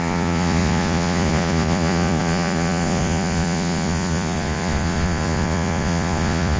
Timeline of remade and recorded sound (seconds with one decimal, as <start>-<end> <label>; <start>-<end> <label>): 0.0-6.6 remade